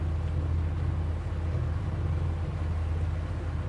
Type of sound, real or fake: real